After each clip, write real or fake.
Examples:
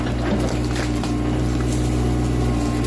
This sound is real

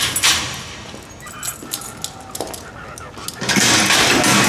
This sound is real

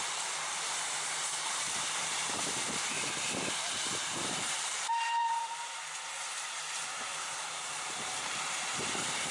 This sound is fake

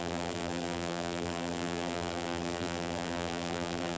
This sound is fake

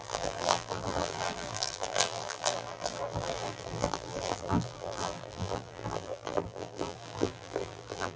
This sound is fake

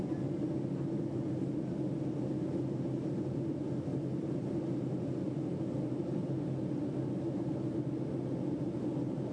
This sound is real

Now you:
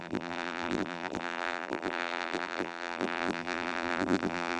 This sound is fake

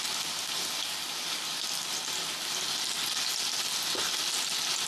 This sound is real